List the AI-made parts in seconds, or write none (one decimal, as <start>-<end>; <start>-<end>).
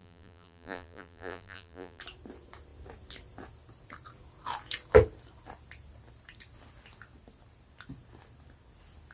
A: 0.0-2.0